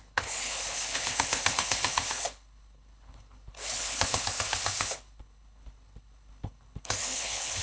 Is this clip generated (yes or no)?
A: yes